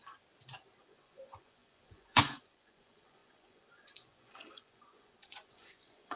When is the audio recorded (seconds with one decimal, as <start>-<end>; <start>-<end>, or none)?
0.0-0.8